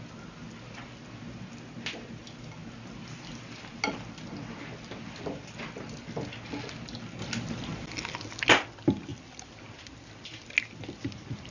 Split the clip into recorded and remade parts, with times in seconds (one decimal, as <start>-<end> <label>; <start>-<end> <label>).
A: 0.0-11.5 recorded